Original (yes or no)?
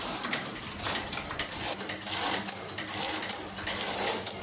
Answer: yes